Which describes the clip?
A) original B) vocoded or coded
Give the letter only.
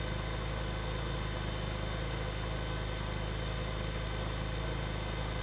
A